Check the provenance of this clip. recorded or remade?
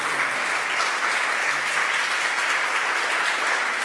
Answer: recorded